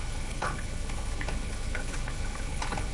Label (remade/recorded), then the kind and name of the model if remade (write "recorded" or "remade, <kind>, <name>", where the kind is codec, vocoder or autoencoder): remade, codec, HILCodec